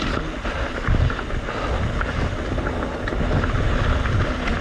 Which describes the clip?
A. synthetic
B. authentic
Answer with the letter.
B